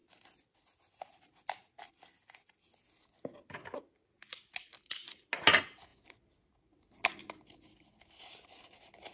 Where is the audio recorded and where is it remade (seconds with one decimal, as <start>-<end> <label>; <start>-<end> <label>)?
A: 0.0-9.1 recorded